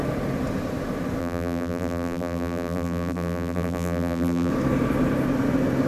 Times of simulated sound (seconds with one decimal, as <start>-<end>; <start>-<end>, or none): 1.2-4.5